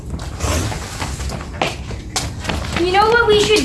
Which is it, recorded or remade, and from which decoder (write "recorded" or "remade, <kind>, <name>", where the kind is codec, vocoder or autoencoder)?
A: recorded